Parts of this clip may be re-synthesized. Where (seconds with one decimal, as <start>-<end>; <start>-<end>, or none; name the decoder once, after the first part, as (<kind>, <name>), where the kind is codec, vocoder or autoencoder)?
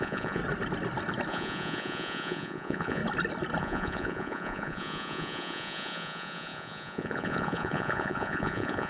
0.0-0.4 (vocoder, Vocos); 1.3-3.0; 3.6-8.9